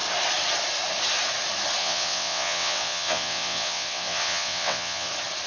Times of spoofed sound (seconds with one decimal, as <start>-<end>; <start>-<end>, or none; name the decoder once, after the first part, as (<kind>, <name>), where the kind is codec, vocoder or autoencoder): 1.8-5.1 (vocoder, WaveNeXt)